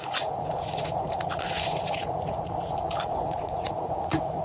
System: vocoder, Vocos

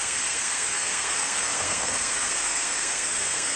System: codec, SNAC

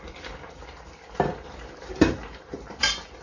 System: vocoder, BigVGAN v2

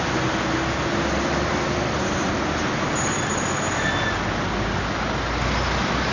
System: none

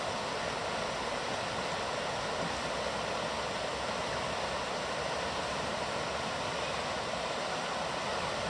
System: none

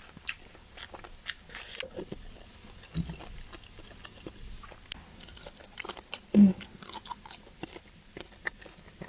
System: none